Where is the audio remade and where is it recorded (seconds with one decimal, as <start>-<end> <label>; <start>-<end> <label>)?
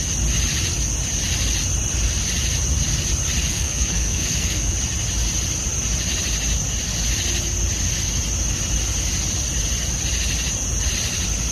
0.0-3.5 recorded; 3.5-4.7 remade; 4.7-11.5 recorded